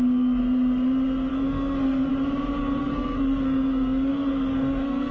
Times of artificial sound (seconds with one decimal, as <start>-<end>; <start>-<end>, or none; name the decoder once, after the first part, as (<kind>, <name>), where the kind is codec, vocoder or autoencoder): 0.0-0.4 (codec, SNAC); 1.3-2.1; 2.8-5.1